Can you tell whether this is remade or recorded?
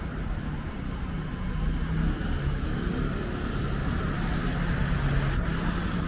recorded